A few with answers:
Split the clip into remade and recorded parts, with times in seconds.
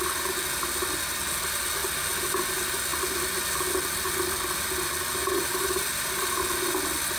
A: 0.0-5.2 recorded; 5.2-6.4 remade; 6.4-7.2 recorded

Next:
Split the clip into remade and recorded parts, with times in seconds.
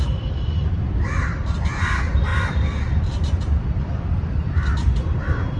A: 0.0-5.6 remade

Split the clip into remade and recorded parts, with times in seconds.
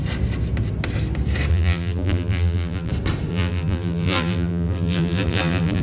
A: 0.0-1.5 recorded; 1.5-2.9 remade; 2.9-3.3 recorded; 3.3-5.8 remade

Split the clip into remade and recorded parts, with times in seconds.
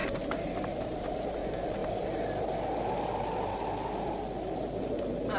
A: 0.0-1.4 remade; 1.4-5.4 recorded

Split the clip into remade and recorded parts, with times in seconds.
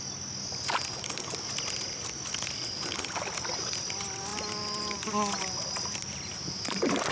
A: 0.0-7.1 recorded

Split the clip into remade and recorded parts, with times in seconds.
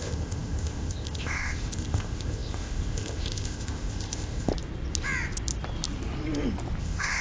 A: 0.0-4.5 remade; 4.5-6.8 recorded; 6.8-7.2 remade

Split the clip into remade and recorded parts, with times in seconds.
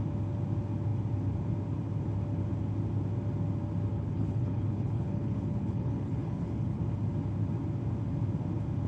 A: 0.0-3.9 recorded; 3.9-6.8 remade; 6.8-8.9 recorded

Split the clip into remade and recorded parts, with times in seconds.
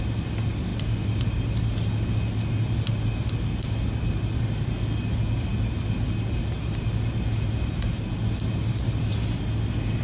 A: 0.0-10.0 recorded